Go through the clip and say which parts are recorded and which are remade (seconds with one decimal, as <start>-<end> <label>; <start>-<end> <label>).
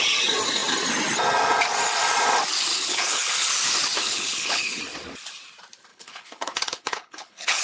0.0-2.7 recorded; 2.7-3.5 remade; 3.5-4.0 recorded; 4.0-4.8 remade; 4.8-5.9 recorded; 5.9-7.6 remade